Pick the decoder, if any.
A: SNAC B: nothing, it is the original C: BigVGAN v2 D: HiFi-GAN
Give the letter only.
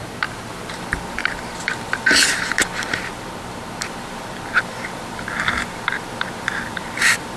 C